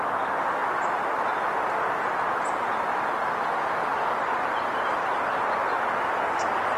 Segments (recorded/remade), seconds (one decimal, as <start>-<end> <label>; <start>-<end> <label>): 0.0-6.8 recorded